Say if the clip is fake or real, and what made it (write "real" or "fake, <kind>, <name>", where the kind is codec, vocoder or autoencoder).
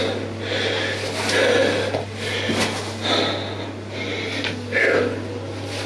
real